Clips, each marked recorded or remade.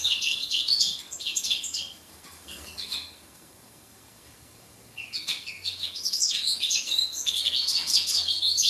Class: remade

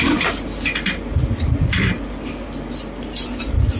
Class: recorded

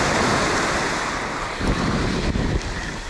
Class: recorded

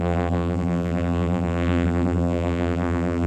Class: remade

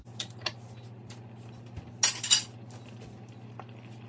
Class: recorded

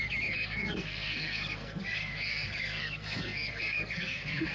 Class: remade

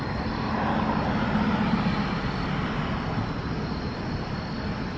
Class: recorded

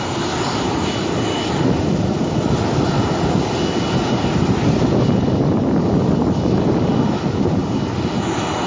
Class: recorded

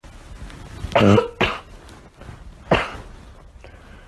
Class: recorded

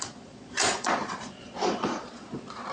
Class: remade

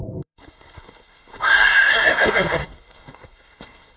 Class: remade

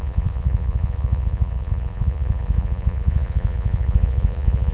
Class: remade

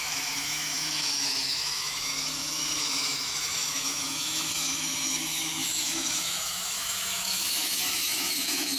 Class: remade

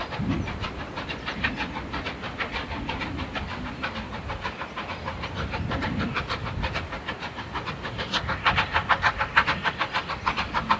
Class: recorded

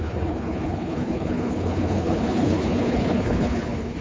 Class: remade